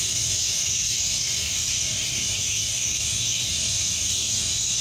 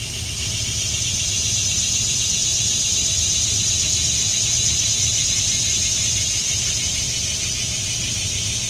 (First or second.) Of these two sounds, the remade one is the first